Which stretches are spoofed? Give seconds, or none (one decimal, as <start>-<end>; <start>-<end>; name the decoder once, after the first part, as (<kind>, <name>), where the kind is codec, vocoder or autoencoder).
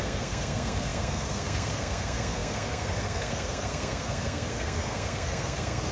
0.0-5.9 (codec, SNAC)